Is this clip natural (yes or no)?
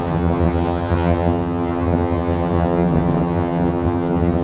no